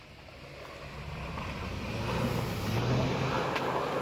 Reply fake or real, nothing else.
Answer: real